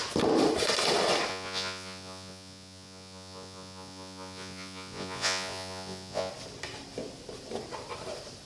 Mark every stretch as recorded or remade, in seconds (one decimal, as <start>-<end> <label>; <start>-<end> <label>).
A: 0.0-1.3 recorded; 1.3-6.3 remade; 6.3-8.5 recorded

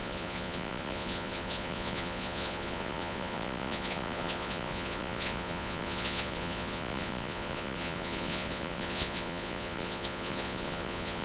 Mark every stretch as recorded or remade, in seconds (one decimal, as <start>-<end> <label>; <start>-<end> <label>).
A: 0.0-11.2 remade

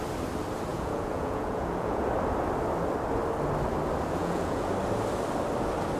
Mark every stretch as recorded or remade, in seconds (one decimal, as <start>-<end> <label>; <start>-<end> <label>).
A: 0.0-0.7 recorded; 0.7-2.1 remade; 2.1-4.2 recorded; 4.2-4.7 remade; 4.7-6.0 recorded